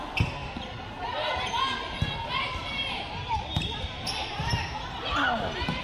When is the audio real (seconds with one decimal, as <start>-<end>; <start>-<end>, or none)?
0.0-2.6; 5.0-5.8